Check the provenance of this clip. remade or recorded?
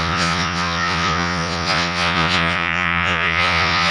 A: remade